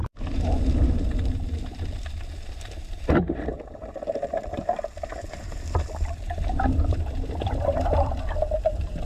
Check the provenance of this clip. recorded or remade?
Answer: remade